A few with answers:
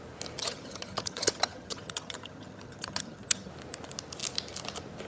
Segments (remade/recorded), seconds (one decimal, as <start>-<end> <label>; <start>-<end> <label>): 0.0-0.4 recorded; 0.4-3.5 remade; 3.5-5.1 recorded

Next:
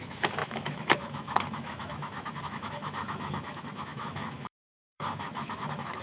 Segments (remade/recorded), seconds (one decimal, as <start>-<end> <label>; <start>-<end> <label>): 0.0-6.0 remade

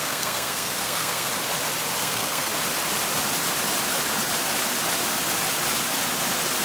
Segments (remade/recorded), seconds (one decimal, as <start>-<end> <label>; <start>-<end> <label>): 0.0-1.3 remade; 1.3-2.0 recorded; 2.0-2.5 remade; 2.5-6.6 recorded

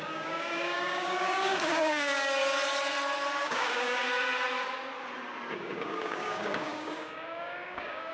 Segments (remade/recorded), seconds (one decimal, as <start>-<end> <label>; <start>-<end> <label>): 0.0-2.4 remade; 2.4-3.4 recorded; 3.4-4.0 remade; 4.0-5.5 recorded; 5.5-8.1 remade

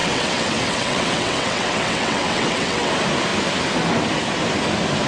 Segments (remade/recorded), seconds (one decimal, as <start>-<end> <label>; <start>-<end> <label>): 0.0-2.9 remade; 2.9-5.1 recorded

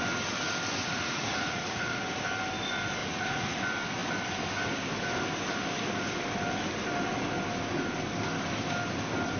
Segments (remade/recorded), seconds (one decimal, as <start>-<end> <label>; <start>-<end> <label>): 0.0-0.8 recorded; 0.8-2.0 remade; 2.0-3.0 recorded; 3.0-3.6 remade; 3.6-9.4 recorded